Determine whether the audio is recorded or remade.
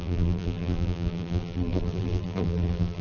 remade